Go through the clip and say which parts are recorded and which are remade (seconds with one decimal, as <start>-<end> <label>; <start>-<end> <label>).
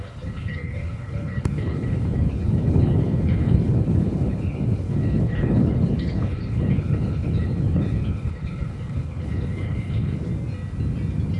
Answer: 0.0-10.3 remade; 10.3-11.4 recorded